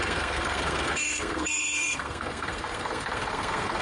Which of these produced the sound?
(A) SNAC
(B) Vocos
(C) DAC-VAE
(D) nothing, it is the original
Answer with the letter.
A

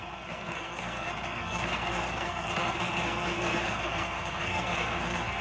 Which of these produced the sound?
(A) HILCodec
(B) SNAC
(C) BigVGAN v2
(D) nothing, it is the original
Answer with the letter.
B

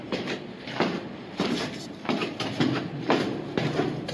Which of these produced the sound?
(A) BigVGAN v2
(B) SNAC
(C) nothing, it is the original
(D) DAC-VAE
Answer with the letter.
C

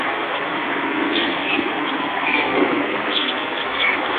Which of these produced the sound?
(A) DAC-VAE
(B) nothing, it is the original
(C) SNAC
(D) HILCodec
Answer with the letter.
C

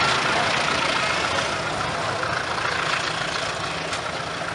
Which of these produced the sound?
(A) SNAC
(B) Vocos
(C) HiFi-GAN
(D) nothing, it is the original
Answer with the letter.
D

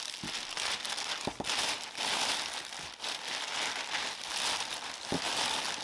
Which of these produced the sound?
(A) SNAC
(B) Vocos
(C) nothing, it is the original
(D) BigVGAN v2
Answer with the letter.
C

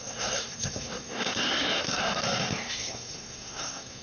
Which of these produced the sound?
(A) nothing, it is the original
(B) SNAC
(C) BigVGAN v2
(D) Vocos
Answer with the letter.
B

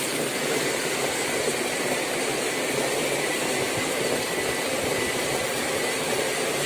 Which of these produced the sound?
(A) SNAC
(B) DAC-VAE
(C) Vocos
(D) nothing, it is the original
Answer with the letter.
D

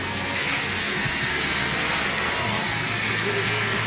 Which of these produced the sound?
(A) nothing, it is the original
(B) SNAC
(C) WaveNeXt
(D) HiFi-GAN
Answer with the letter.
B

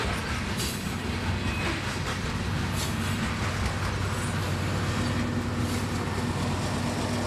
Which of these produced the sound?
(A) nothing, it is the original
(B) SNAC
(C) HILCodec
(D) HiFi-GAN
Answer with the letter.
A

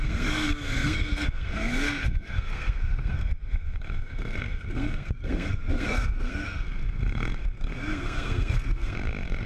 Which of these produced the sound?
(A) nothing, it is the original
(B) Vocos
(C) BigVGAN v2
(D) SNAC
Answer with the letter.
D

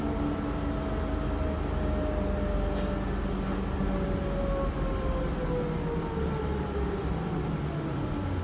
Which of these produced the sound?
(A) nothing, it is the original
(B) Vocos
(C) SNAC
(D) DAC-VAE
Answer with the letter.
A